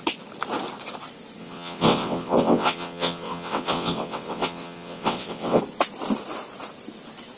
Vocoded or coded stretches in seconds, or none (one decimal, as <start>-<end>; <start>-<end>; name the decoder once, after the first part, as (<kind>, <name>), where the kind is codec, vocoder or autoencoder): 1.4-5.6 (vocoder, WaveNeXt)